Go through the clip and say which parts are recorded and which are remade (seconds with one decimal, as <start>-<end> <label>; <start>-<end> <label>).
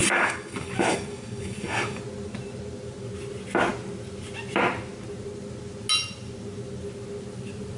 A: 0.0-2.0 remade; 2.0-7.8 recorded